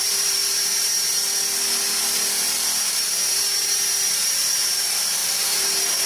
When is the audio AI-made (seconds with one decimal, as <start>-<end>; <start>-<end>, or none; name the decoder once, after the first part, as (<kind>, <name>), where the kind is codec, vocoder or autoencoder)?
0.0-0.4 (vocoder, BigVGAN v2); 4.1-6.1